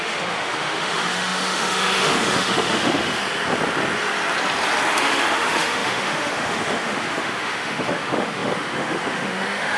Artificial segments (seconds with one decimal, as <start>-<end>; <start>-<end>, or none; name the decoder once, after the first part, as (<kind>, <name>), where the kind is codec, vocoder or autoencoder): 0.0-3.2 (autoencoder, DAC-VAE); 4.9-9.8